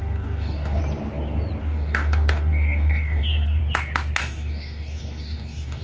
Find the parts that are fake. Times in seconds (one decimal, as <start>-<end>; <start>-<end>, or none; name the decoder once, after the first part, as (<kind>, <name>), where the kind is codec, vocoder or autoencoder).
0.0-0.8 (codec, DAC); 1.6-3.6; 4.2-5.8

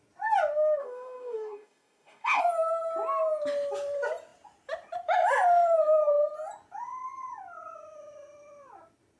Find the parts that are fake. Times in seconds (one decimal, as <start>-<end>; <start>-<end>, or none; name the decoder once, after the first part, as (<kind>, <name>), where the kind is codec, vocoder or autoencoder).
0.8-2.4 (codec, DAC)

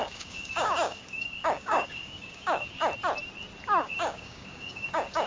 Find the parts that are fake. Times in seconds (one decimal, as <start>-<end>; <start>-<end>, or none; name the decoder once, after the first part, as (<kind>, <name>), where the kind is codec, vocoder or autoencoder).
0.0-2.8 (codec, DAC); 3.8-5.3

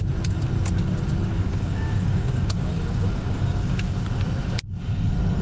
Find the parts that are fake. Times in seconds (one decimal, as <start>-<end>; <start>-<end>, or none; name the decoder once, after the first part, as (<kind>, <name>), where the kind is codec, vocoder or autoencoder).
1.5-3.9 (codec, DAC)